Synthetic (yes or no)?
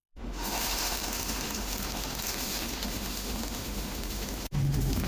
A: yes